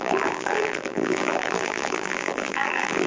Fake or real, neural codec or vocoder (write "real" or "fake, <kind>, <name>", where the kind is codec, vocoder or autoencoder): fake, vocoder, BigVGAN v2